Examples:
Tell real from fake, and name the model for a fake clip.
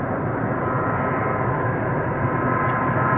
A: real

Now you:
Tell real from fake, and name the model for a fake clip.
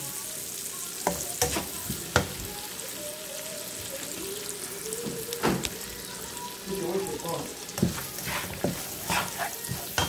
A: real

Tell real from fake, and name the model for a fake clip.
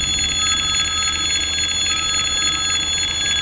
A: real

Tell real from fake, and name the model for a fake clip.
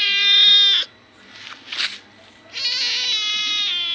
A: real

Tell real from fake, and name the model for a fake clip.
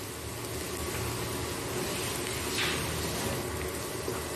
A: real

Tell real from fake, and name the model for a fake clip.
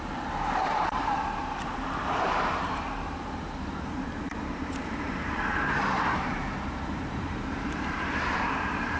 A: fake, vocoder, BigVGAN v2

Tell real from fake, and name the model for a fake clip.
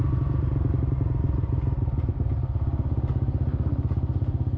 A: real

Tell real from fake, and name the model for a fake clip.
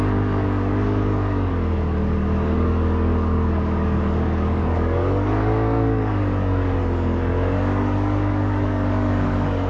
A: fake, codec, DAC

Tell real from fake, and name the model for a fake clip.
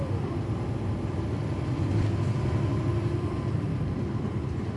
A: real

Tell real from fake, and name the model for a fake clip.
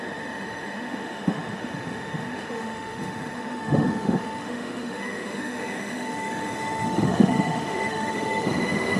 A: fake, autoencoder, DAC-VAE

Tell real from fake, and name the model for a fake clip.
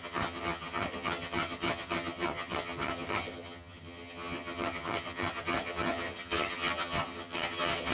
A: fake, vocoder, HiFi-GAN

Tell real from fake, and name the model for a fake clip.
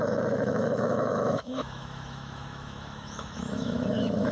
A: fake, autoencoder, DAC-VAE